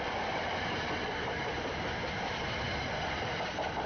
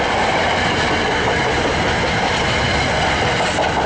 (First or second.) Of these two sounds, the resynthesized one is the first